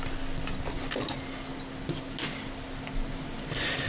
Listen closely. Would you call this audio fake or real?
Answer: real